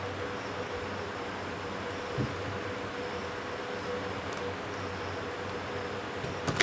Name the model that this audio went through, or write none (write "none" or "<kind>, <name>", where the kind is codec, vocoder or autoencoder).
none